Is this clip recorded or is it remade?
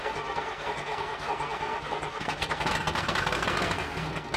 remade